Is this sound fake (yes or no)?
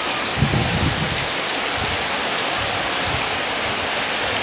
no